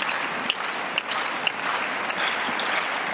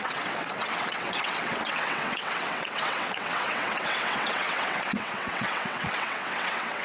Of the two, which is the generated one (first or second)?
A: second